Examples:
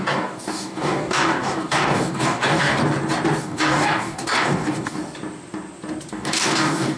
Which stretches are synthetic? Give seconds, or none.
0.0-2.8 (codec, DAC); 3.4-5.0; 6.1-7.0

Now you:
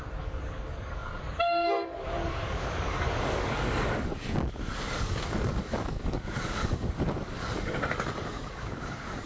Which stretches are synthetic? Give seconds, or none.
0.0-9.3 (codec, DAC)

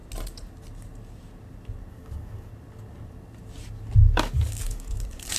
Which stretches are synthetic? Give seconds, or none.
1.9-2.5 (codec, DAC); 4.1-5.4

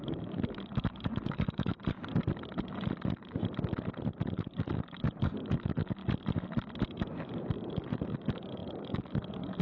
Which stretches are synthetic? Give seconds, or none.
0.0-1.7 (codec, DAC); 4.2-6.0; 7.7-9.6